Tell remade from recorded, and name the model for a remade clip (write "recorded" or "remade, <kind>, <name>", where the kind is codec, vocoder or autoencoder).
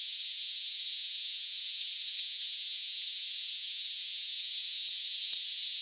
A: remade, vocoder, Vocos